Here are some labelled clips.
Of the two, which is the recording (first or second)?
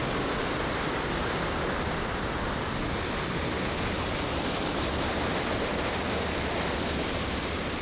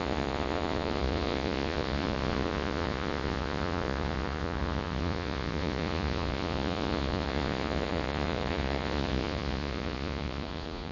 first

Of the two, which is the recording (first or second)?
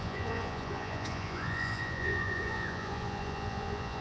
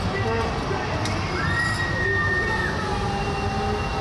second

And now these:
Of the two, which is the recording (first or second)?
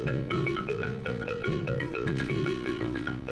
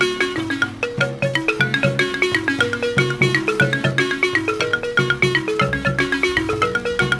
second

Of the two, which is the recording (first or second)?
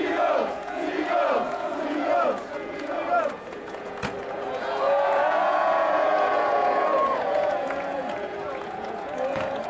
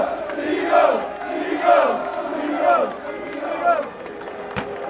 second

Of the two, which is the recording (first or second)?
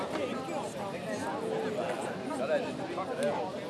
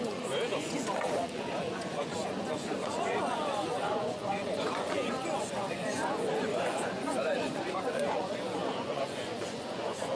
first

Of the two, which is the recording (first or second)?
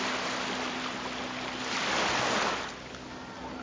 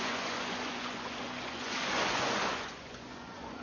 first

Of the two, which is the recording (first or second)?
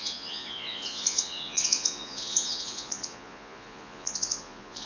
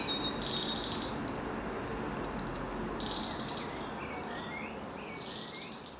second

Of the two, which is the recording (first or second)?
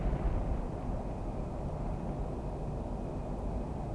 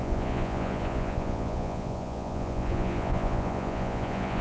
first